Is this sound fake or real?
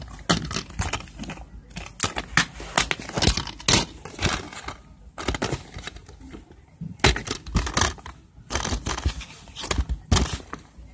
real